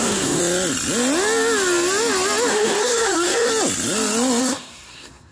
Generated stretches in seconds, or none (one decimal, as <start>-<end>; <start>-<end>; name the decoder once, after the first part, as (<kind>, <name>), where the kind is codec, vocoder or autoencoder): 0.0-0.4 (codec, SNAC); 2.5-3.5; 4.4-5.3